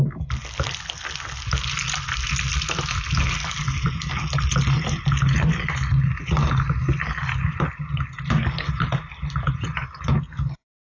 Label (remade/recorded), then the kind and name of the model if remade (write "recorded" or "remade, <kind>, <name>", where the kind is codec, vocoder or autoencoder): recorded